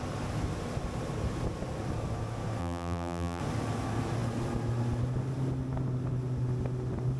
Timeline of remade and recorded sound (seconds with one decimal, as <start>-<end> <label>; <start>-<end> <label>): 0.0-2.6 recorded; 2.6-3.4 remade; 3.4-7.2 recorded